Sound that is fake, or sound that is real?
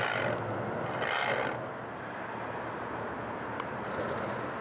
real